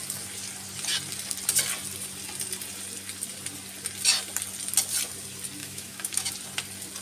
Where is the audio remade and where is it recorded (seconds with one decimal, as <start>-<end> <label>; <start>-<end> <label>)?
0.0-5.6 recorded; 5.6-6.3 remade; 6.3-7.0 recorded